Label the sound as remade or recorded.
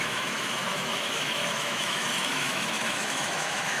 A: remade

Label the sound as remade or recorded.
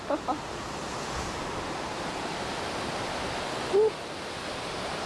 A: recorded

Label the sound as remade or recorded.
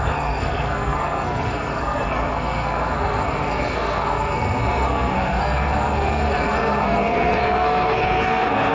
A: remade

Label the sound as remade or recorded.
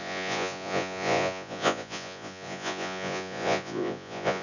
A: remade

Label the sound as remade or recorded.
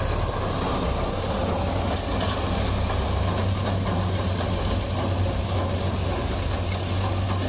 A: recorded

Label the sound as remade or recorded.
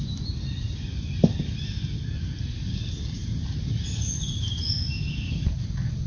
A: recorded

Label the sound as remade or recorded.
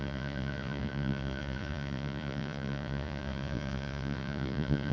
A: remade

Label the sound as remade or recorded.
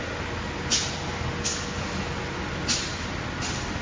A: recorded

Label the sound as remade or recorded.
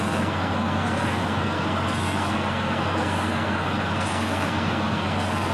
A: remade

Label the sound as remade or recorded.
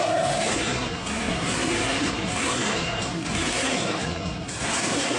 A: remade